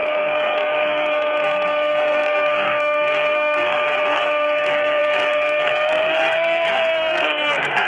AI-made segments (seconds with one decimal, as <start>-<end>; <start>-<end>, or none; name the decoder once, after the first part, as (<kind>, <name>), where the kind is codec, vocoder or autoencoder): 0.0-7.9 (codec, SNAC)